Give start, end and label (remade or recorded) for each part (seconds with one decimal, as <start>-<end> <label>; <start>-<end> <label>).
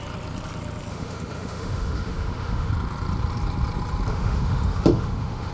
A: 0.0-0.9 recorded; 0.9-2.7 remade; 2.7-4.1 recorded; 4.1-5.5 remade